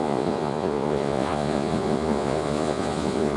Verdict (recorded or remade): remade